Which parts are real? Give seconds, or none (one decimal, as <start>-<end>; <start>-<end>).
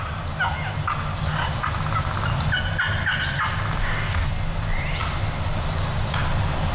0.0-3.8; 4.3-6.7